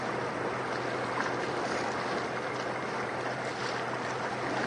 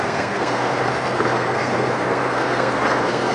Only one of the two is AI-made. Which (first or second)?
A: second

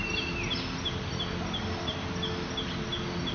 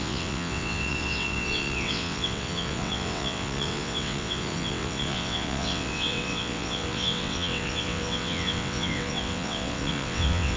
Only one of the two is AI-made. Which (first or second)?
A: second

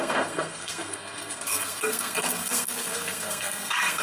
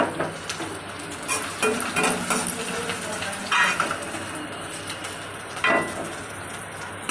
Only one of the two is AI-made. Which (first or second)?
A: first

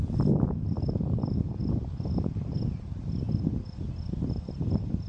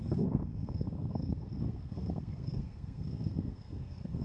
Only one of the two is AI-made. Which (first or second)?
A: second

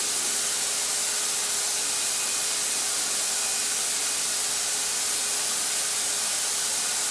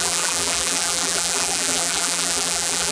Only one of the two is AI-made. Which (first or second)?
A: second